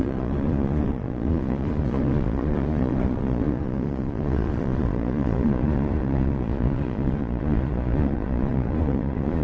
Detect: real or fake fake